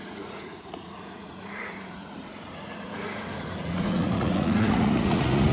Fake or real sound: fake